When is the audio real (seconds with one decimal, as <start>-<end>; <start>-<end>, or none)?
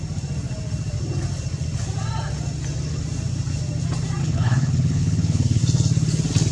0.0-4.2; 5.6-6.5